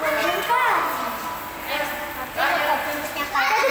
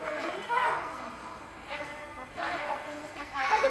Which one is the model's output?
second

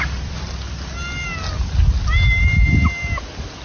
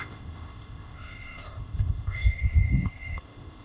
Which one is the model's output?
second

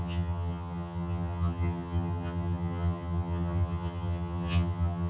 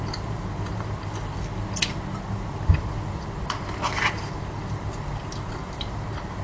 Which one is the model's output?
first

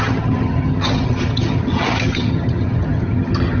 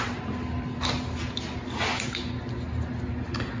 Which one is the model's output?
first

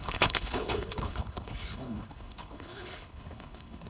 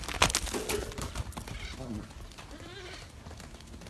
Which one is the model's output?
first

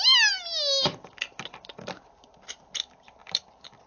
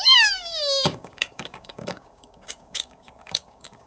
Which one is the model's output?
second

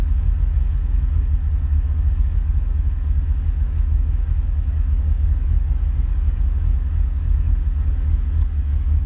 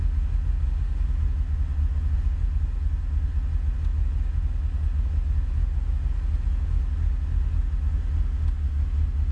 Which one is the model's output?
first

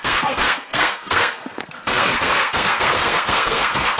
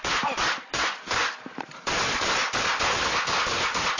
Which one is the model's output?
first